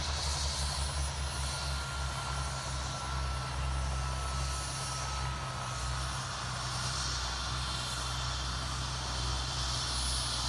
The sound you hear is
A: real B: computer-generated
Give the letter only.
A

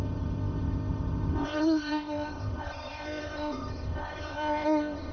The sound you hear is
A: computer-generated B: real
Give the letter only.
A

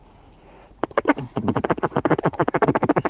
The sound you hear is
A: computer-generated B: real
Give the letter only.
A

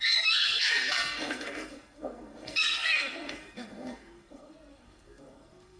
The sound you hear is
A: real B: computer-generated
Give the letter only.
B